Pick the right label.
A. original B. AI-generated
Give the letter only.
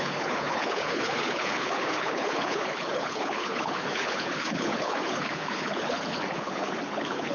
B